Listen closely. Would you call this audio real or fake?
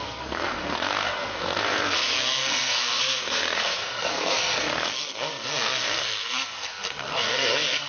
fake